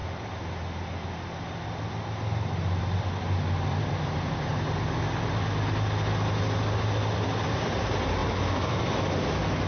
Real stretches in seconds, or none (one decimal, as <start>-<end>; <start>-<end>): 0.0-2.8; 4.5-7.5; 8.2-9.7

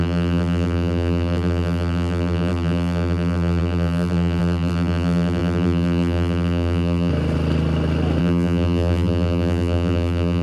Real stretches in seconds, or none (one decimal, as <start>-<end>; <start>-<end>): 7.1-8.2

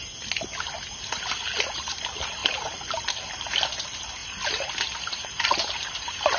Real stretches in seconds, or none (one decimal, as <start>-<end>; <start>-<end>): 0.0-2.4; 3.6-4.2